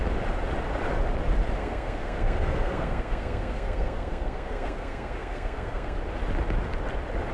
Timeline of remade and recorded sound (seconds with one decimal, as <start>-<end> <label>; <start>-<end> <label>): 0.0-1.6 recorded; 1.6-6.0 remade; 6.0-7.3 recorded

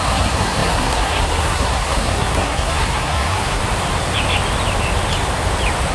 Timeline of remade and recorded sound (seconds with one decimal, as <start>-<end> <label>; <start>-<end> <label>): 0.0-3.6 remade; 3.6-5.9 recorded

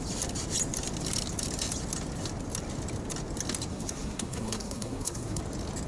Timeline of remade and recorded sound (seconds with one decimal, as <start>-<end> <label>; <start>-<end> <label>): 0.0-3.7 recorded; 3.7-5.4 remade; 5.4-5.9 recorded

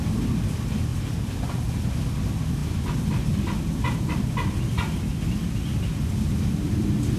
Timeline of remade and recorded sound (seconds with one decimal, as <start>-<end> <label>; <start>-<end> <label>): 0.0-7.2 recorded

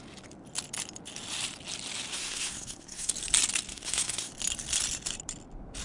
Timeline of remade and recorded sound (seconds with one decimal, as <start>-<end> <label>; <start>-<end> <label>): 0.0-2.1 recorded; 2.1-3.1 remade; 3.1-3.7 recorded; 3.7-4.3 remade; 4.3-5.8 recorded

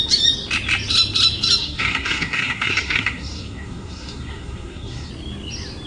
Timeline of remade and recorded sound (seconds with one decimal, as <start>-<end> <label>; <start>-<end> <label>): 0.0-1.6 recorded; 1.6-5.1 remade; 5.1-5.9 recorded